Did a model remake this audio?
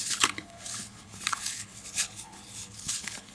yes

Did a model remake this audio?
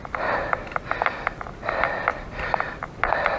no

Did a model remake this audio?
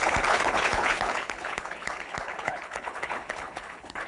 yes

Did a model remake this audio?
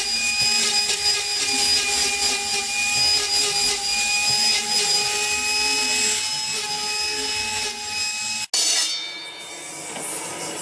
no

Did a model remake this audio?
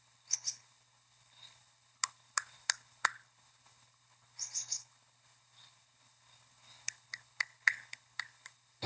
yes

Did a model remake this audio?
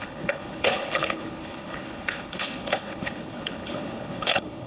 yes